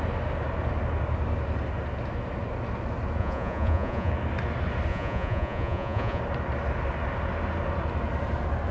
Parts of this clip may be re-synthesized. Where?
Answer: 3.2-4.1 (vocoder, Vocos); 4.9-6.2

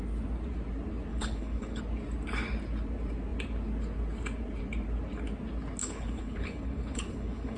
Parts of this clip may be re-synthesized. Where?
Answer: 1.1-1.8 (codec, HILCodec); 5.8-7.6

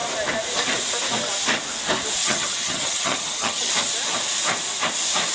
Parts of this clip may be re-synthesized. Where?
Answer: 2.2-3.7 (vocoder, HiFi-GAN)

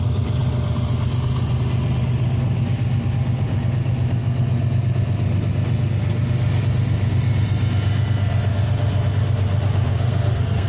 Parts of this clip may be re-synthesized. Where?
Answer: 9.9-10.7 (codec, SNAC)